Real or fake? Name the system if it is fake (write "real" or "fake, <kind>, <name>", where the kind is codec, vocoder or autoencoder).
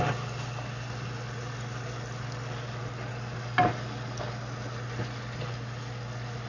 real